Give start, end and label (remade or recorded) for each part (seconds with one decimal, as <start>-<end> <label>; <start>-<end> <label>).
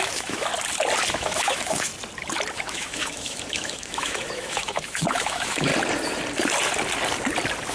0.0-0.5 remade; 0.5-1.1 recorded; 1.1-1.9 remade; 1.9-2.5 recorded; 2.5-5.7 remade; 5.7-7.7 recorded